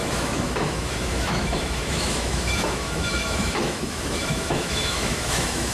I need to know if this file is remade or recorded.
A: remade